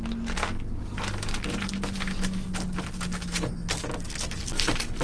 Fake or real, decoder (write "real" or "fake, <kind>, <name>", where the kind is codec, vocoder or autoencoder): real